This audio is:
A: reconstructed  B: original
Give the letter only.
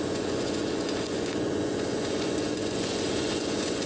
A